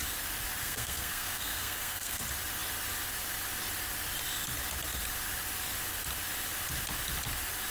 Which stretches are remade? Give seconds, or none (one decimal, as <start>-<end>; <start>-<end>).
0.6-2.2